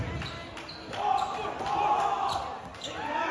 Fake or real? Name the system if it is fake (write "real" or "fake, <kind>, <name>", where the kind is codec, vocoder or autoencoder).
real